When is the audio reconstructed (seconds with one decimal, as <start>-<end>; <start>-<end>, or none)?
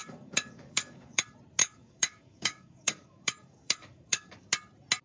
0.0-1.2; 1.6-4.5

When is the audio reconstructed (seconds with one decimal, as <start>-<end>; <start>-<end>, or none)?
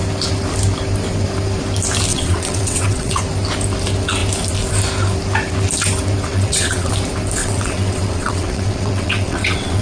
2.1-3.2; 6.3-6.9; 7.4-9.8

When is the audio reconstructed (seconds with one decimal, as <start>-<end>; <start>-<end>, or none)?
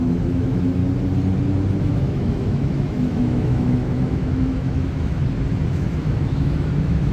0.0-0.8; 1.8-5.2; 5.7-7.1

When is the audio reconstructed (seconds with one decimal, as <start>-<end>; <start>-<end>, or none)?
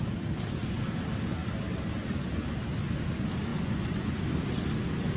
3.5-4.2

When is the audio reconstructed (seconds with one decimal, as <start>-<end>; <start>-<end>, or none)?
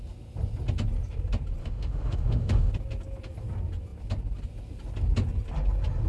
1.6-2.7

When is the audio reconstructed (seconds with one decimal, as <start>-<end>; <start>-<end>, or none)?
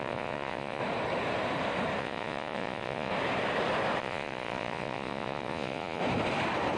0.0-0.8; 2.0-3.1; 4.0-6.0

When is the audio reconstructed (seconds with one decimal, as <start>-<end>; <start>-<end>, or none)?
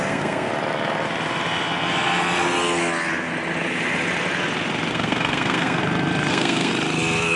0.0-0.5; 4.9-5.8; 6.3-6.7